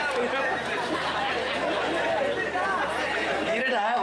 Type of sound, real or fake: real